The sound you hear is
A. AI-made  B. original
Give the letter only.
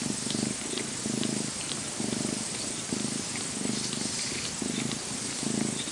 B